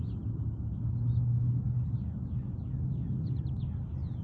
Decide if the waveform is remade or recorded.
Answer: recorded